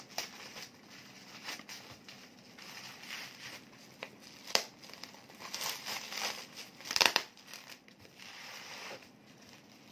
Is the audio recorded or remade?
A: remade